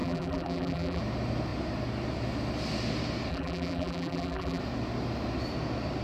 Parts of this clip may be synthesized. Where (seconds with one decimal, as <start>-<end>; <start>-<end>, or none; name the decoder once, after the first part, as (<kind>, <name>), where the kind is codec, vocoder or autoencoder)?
0.0-1.0 (vocoder, BigVGAN v2); 3.3-4.6